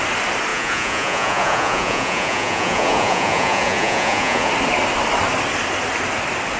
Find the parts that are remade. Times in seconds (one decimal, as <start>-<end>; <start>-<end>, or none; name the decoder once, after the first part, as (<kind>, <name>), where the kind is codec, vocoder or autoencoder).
0.5-4.5 (vocoder, Vocos)